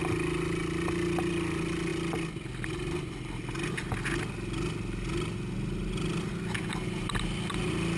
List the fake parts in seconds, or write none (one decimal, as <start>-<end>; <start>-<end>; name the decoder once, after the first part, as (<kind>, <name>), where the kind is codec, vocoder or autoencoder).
none